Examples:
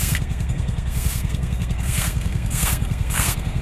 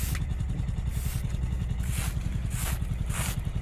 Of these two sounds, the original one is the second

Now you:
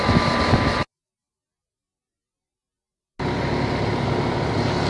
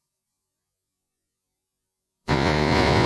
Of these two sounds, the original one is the first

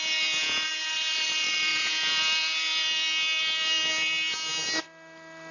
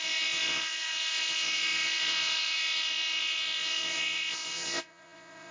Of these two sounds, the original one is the first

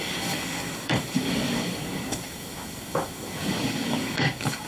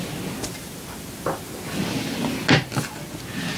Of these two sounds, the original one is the second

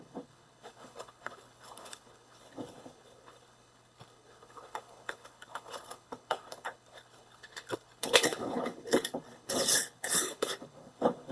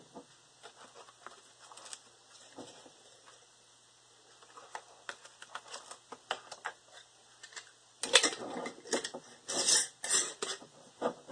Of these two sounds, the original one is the second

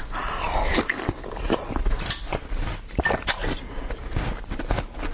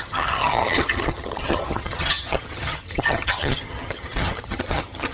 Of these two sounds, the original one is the first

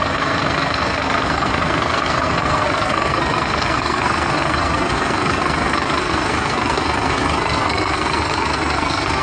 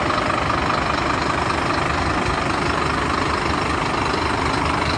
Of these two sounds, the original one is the second